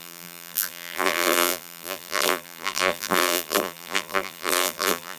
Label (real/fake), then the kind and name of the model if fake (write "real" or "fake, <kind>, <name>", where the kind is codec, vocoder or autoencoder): fake, vocoder, BigVGAN v2